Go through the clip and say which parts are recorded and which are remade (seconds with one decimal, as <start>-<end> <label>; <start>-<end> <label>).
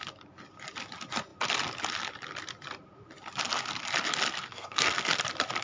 0.0-4.3 recorded; 4.3-5.1 remade; 5.1-5.6 recorded